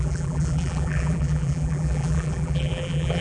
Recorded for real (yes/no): no